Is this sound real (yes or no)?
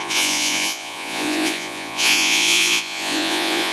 no